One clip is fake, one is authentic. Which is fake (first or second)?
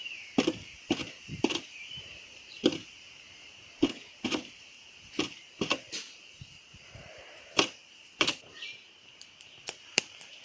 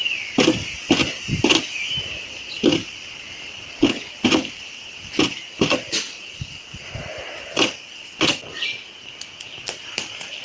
first